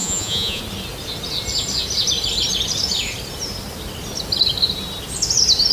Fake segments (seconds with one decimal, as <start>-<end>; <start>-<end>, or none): 0.0-0.6